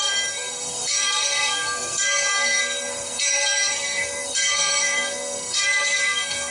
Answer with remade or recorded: remade